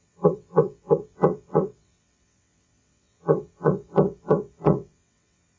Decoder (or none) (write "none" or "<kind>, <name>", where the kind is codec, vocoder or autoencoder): vocoder, WaveNeXt